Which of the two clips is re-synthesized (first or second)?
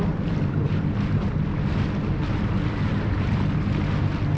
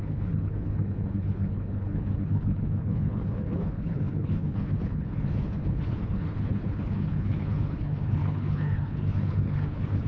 second